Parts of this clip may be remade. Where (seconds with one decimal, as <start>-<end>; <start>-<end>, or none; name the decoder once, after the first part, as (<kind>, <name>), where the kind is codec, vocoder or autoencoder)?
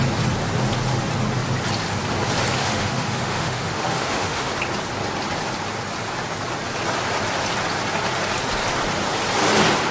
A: 2.6-4.5 (autoencoder, DAC-VAE)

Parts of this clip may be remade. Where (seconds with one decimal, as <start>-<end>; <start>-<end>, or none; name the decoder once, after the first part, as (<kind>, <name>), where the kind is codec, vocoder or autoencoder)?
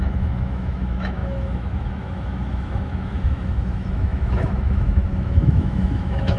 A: 0.0-6.4 (autoencoder, DAC-VAE)